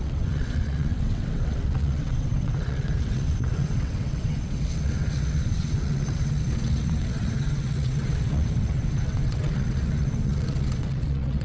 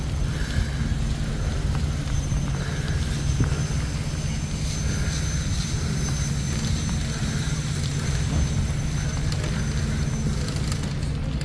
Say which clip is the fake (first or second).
first